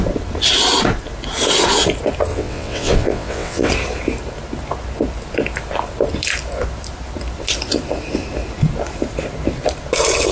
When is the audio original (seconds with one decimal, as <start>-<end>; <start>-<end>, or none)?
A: 0.0-2.3; 3.7-10.3